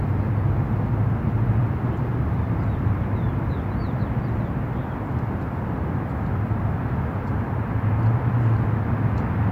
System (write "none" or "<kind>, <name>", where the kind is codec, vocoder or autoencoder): none